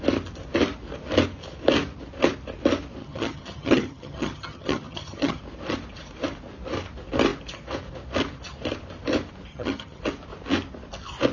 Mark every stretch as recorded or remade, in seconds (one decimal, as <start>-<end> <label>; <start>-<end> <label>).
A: 0.0-3.0 recorded; 3.0-5.4 remade; 5.4-9.5 recorded; 9.5-10.0 remade; 10.0-11.3 recorded